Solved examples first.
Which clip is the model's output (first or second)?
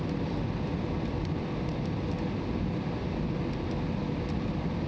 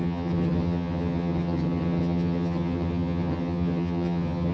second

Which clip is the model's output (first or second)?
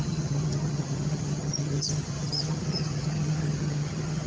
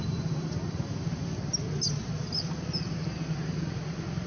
first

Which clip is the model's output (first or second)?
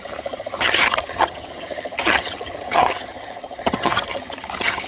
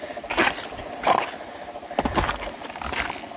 first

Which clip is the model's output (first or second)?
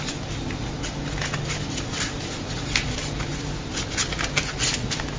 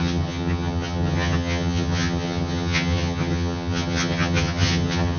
second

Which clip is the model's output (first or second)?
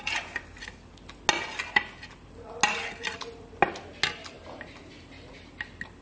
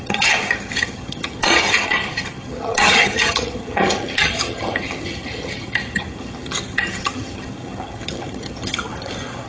second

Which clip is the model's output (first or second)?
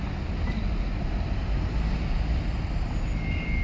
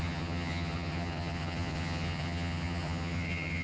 second